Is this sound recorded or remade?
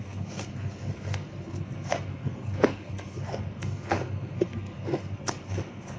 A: remade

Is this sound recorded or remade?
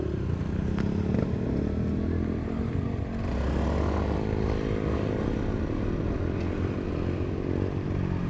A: recorded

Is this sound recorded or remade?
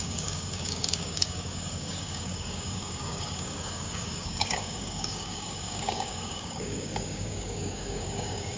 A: remade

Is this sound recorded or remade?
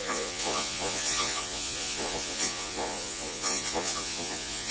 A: remade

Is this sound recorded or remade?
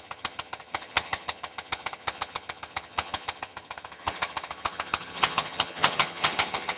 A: remade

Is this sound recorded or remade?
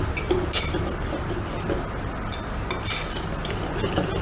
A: recorded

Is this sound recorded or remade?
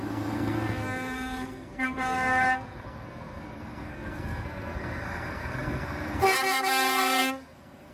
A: remade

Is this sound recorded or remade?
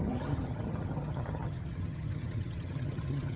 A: remade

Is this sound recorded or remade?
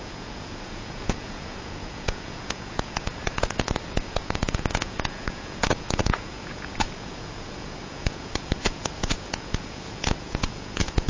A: remade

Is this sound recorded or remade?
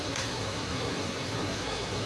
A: remade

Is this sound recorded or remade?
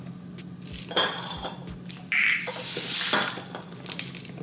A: recorded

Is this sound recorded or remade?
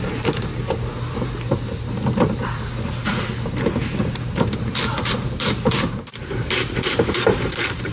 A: remade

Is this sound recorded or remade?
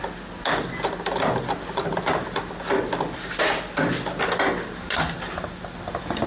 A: recorded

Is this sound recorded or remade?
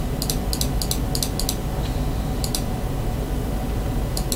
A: recorded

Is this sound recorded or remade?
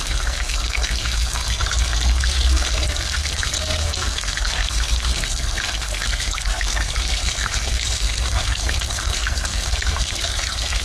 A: remade